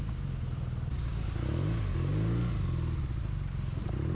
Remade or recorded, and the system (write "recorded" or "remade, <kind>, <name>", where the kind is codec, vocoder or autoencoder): recorded